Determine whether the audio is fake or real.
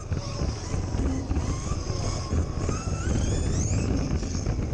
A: real